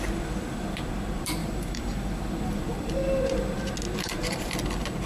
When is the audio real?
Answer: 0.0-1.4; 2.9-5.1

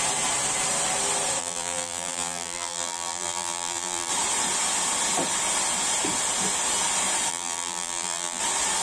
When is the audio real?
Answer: 0.0-1.4; 4.1-7.3; 8.4-8.8

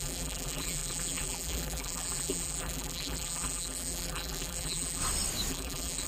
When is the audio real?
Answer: 5.0-5.5

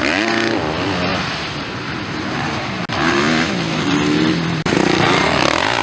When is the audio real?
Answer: 0.0-1.1; 2.7-5.8

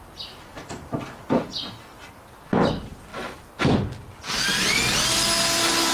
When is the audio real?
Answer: 0.0-5.9

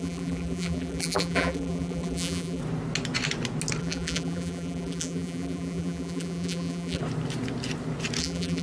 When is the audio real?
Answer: 2.6-3.8; 7.0-8.2

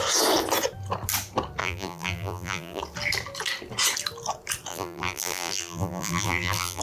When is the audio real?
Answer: 0.0-1.6; 2.8-4.7

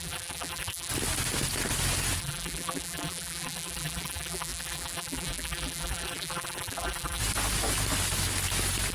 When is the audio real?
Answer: 0.9-2.2; 7.2-8.9